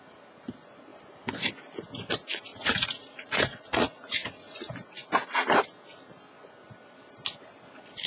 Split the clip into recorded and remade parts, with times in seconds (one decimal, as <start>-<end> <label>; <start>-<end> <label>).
0.0-2.5 recorded; 2.5-4.7 remade; 4.7-8.1 recorded